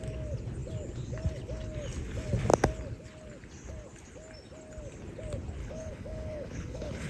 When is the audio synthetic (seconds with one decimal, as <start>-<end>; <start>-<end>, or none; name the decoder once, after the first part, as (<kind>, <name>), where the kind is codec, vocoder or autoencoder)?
5.6-7.1 (codec, HILCodec)